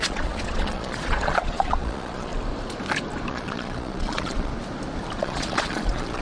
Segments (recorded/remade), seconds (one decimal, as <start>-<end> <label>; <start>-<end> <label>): 0.0-2.3 remade; 2.3-3.3 recorded; 3.3-4.5 remade; 4.5-5.2 recorded; 5.2-6.2 remade